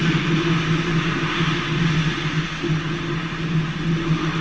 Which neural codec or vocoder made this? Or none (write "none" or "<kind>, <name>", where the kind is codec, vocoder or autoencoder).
none